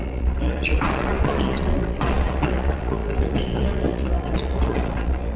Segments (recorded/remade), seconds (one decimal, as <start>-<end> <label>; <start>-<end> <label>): 0.0-5.4 remade